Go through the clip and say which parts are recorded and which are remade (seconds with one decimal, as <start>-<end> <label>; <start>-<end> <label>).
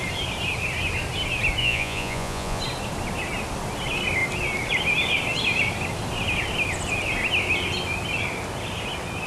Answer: 0.0-1.6 recorded; 1.6-2.6 remade; 2.6-9.3 recorded